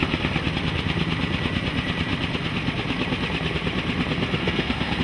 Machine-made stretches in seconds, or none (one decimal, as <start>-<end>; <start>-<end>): 4.4-5.0

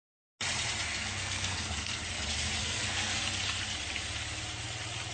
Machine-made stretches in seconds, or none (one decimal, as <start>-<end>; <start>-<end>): 0.9-2.0; 2.6-3.2